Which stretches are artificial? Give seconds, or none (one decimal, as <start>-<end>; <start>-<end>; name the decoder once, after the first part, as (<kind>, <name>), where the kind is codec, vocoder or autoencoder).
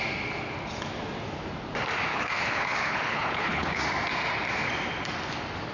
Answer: 2.1-3.8 (codec, HILCodec)